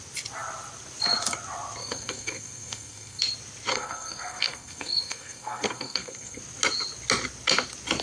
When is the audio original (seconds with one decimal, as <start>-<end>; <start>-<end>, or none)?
0.0-1.8; 3.2-3.7; 6.4-8.0